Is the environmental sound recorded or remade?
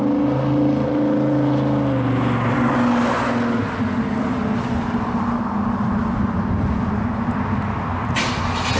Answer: recorded